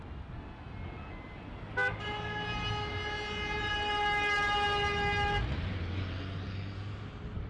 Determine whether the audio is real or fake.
real